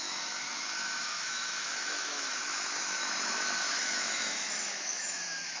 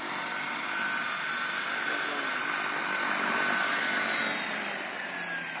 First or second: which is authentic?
second